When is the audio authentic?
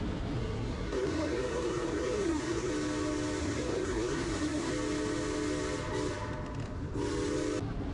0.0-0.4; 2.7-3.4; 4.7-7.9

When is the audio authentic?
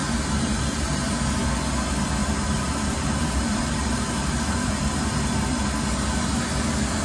1.3-2.2; 6.4-7.0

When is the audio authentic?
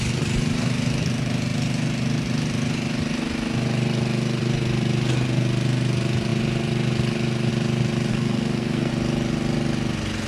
0.0-8.1; 8.9-10.3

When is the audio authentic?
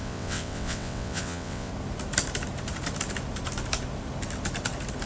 1.7-5.1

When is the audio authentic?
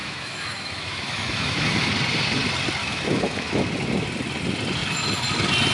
1.9-2.8; 3.6-5.7